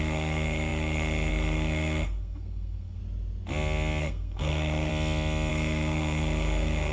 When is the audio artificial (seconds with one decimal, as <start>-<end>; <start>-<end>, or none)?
0.0-3.0; 4.0-4.9; 5.5-6.9